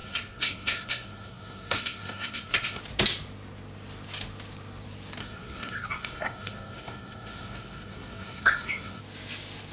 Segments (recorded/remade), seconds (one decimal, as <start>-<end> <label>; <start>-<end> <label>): 0.0-2.8 remade; 2.8-5.2 recorded; 5.2-9.0 remade; 9.0-9.7 recorded